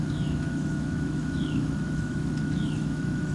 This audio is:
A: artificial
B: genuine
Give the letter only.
A